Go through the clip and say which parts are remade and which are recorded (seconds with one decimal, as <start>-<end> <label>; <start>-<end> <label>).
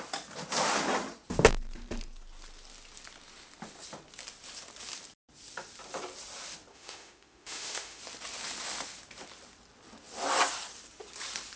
0.0-6.7 recorded; 6.7-8.0 remade; 8.0-11.6 recorded